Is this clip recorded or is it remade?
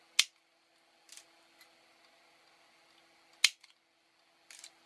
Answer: recorded